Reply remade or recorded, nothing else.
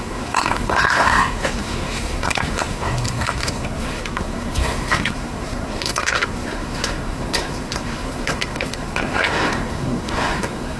remade